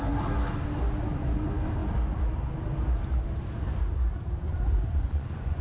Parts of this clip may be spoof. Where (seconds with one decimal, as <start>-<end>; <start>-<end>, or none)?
4.5-5.6